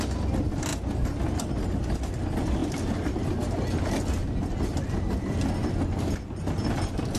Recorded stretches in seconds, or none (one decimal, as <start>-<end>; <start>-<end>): 0.0-7.2